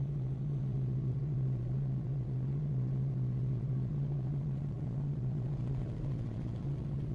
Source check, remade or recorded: remade